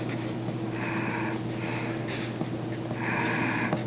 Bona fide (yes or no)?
yes